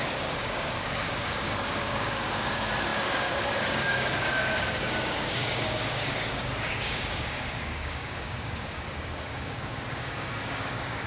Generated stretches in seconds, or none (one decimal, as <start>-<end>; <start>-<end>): 0.0-11.1